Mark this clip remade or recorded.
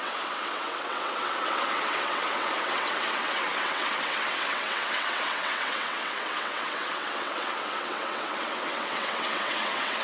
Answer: remade